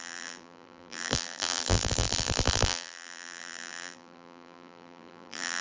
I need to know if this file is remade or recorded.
remade